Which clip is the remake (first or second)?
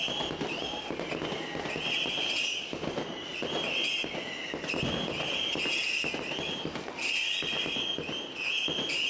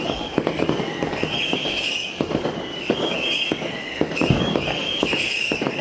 second